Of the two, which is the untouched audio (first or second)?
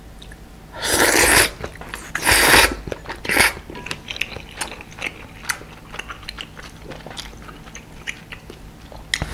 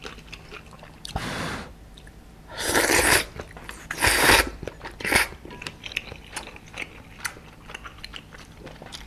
first